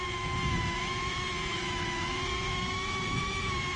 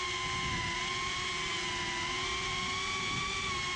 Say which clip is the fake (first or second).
first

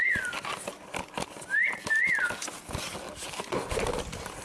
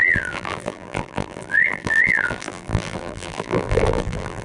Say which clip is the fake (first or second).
second